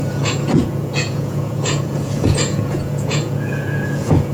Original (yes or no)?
no